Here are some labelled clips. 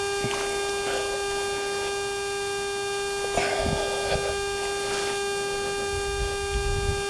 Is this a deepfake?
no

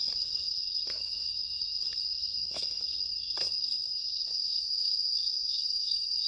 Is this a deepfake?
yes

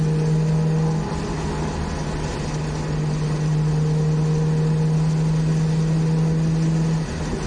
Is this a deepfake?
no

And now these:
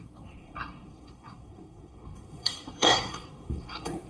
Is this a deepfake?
yes